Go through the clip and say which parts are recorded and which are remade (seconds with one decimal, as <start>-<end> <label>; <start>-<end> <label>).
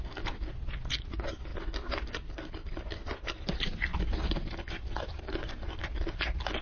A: 0.0-6.6 recorded